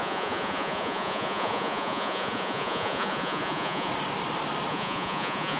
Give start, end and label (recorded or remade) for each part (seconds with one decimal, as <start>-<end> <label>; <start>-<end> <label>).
0.0-3.9 remade; 3.9-4.7 recorded; 4.7-5.6 remade